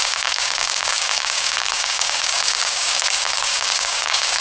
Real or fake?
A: fake